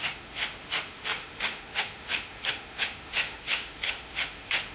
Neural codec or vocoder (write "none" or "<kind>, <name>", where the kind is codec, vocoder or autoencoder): autoencoder, DAC-VAE